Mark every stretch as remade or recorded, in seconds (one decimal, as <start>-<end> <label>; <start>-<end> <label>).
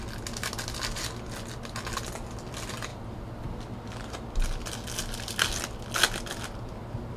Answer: 0.0-7.2 recorded